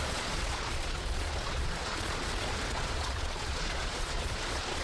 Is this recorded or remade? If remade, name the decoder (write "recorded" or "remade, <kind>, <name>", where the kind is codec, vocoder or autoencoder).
remade, vocoder, Vocos